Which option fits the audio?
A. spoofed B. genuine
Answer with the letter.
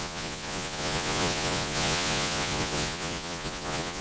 A